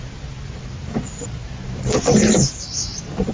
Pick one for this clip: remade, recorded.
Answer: recorded